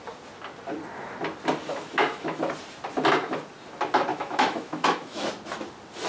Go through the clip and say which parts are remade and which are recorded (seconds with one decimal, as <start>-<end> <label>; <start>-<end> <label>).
0.0-1.7 recorded; 1.7-2.4 remade; 2.4-4.1 recorded; 4.1-5.3 remade; 5.3-6.1 recorded